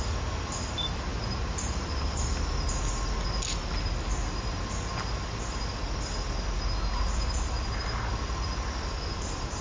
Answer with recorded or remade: recorded